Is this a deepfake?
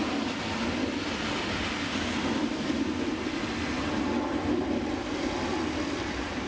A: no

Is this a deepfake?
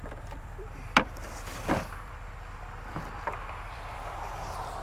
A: yes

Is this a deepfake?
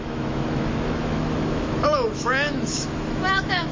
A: yes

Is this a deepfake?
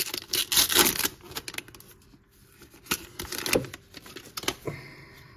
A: no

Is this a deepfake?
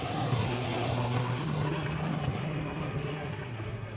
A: yes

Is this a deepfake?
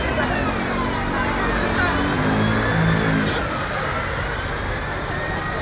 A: no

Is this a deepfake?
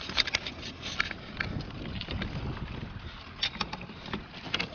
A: no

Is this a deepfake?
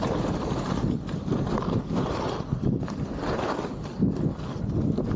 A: no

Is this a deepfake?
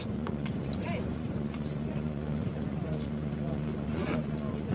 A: yes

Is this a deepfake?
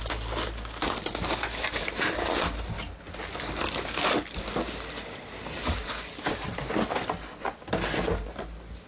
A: no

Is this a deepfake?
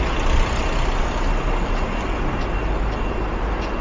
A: no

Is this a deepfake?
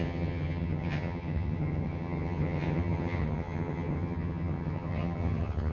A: yes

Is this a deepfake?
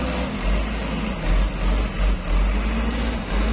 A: no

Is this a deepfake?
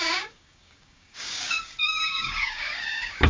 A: yes